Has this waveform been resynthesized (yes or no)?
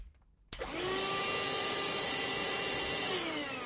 no